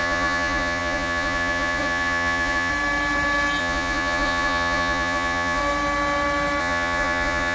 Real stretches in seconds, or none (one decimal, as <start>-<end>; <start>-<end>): 2.7-3.6; 5.6-6.6